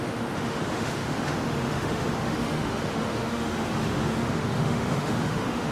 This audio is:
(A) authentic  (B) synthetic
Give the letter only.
B